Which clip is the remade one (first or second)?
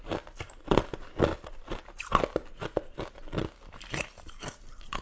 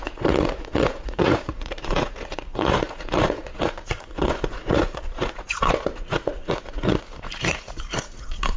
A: second